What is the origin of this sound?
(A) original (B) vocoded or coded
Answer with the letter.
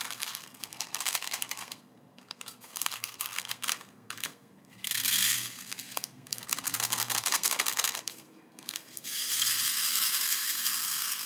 B